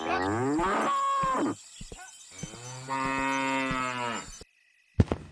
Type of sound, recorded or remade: recorded